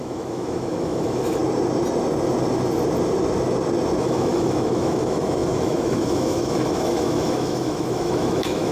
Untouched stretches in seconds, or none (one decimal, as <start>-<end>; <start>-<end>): 1.4-4.0

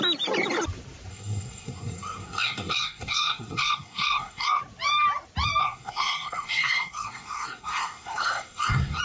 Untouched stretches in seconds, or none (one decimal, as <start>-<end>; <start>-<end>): 0.0-1.1; 4.6-5.6

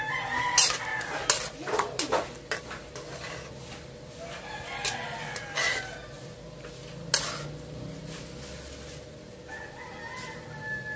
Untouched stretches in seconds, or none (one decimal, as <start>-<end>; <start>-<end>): 0.0-11.0

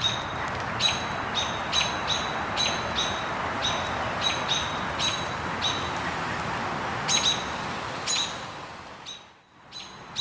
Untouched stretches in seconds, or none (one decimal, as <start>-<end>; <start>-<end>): 0.0-10.2